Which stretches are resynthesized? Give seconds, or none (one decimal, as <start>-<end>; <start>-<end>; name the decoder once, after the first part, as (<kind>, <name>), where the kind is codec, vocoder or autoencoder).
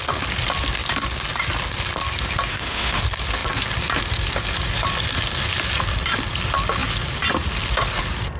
2.5-3.0 (autoencoder, DAC-VAE)